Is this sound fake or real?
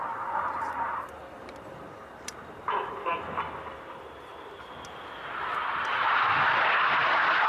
real